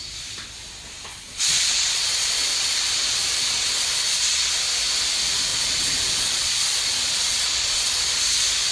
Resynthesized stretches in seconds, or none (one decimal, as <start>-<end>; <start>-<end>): 1.1-4.6; 5.5-8.1